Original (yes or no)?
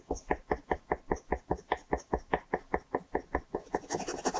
yes